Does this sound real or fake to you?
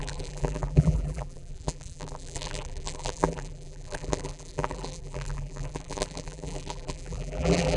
fake